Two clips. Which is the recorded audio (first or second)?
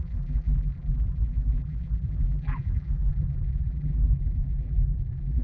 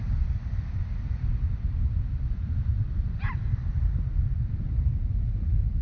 second